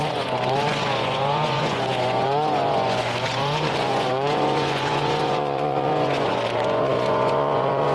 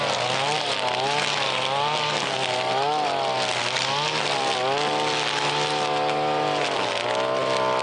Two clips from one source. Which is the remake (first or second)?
first